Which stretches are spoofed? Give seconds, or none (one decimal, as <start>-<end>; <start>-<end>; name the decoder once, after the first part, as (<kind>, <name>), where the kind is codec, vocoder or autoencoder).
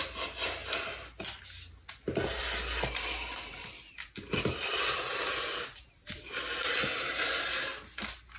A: none